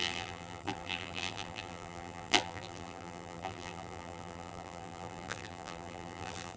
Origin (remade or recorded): remade